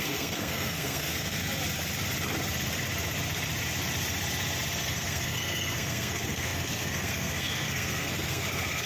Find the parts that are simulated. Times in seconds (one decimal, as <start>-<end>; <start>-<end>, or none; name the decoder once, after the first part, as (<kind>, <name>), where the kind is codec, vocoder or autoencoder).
0.0-1.4 (codec, SNAC); 4.8-8.9

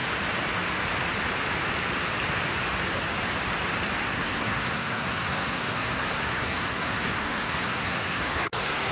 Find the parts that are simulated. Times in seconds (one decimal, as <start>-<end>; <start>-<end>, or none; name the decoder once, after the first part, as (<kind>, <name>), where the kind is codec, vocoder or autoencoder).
4.0-8.9 (codec, SNAC)

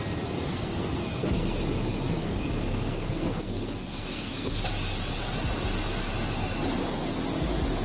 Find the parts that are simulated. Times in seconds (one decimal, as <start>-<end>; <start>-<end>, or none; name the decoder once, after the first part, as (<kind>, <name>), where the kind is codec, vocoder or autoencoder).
0.5-1.6 (codec, SNAC); 2.2-4.5

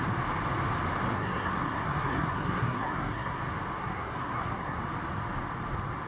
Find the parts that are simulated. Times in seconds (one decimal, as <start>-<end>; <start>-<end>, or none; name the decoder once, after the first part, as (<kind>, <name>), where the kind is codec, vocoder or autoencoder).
1.1-3.4 (codec, SNAC); 3.8-4.8

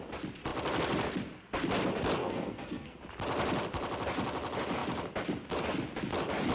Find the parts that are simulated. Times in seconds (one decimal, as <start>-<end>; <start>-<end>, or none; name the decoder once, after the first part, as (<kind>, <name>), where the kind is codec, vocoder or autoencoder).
2.2-3.0 (codec, SNAC)